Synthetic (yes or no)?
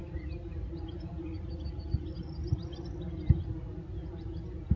no